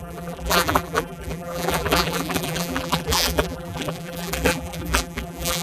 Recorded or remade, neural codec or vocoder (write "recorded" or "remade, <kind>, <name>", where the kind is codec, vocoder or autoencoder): remade, vocoder, BigVGAN v2